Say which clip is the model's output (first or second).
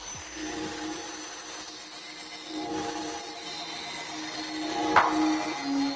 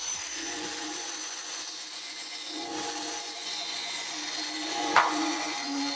second